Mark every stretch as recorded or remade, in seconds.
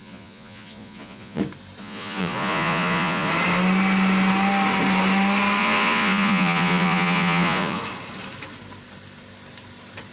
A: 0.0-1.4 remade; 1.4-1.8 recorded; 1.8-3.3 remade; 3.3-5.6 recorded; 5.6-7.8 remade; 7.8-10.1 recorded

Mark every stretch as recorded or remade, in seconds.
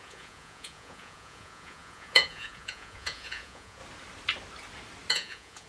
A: 0.0-3.8 remade; 3.8-5.1 recorded; 5.1-5.7 remade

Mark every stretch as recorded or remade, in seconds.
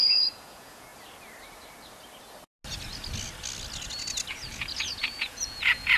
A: 0.0-0.9 remade; 0.9-4.3 recorded; 4.3-6.0 remade